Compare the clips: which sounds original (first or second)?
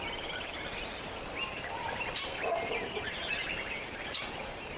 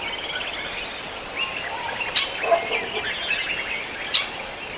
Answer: second